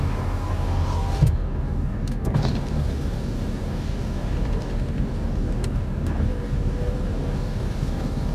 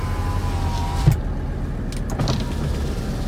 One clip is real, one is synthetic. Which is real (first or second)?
second